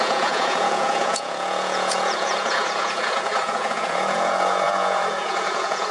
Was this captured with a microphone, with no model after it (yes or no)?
no